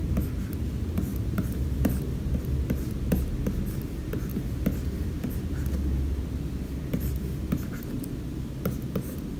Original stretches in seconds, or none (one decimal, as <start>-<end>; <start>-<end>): 0.0-1.1; 2.4-9.4